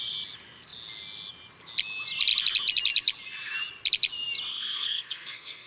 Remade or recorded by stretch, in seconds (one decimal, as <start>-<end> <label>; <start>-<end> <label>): 0.0-4.5 recorded; 4.5-5.7 remade